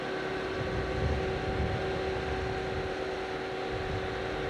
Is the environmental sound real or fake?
real